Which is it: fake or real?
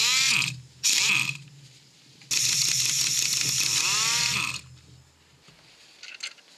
real